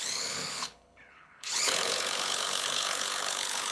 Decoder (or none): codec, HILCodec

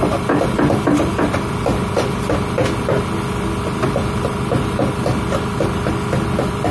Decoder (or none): none